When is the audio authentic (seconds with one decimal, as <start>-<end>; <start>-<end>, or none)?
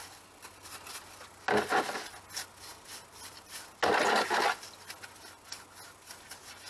0.0-6.7